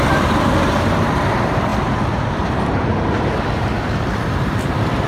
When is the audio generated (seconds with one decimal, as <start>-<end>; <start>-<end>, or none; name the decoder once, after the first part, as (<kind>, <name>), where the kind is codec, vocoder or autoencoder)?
0.0-5.1 (vocoder, BigVGAN v2)